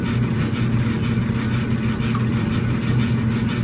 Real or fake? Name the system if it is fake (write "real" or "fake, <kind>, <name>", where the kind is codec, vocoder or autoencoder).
real